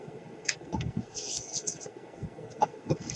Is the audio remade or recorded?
remade